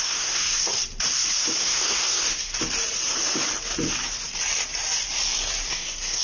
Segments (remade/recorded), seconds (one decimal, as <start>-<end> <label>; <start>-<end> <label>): 0.0-0.7 remade; 0.7-1.6 recorded; 1.6-2.5 remade; 2.5-5.7 recorded; 5.7-6.2 remade